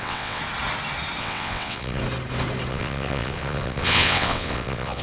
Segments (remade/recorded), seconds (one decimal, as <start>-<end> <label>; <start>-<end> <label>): 0.0-0.4 remade; 0.4-1.2 recorded; 1.2-2.0 remade; 2.0-2.7 recorded; 2.7-5.0 remade